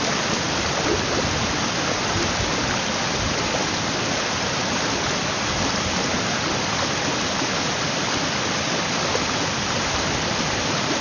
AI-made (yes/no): no